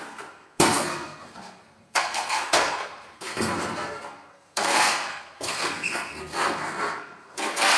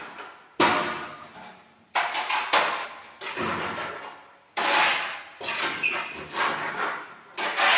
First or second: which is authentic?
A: second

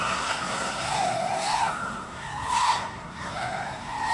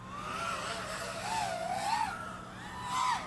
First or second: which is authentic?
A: second